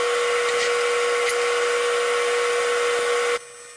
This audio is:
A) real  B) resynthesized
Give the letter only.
A